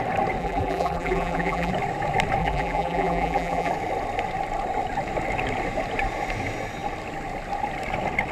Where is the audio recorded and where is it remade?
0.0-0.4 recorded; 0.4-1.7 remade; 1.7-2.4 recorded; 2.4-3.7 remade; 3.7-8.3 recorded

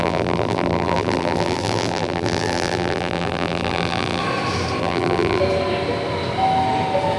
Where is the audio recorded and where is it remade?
0.0-4.2 remade; 4.2-4.8 recorded; 4.8-5.4 remade; 5.4-7.2 recorded